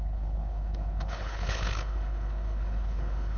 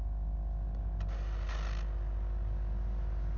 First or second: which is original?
second